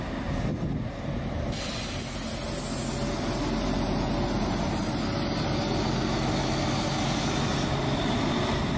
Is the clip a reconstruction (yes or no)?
no